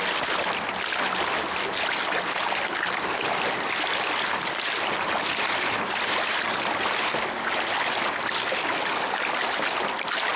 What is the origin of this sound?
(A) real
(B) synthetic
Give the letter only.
A